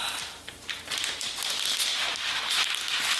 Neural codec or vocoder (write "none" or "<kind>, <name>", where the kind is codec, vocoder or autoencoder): none